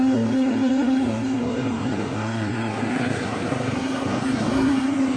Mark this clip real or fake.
fake